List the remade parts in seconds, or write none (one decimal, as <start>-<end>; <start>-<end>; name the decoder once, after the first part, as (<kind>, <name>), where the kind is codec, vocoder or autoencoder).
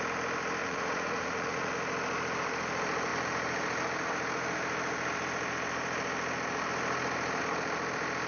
0.6-1.7 (vocoder, Vocos)